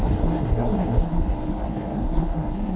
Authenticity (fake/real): fake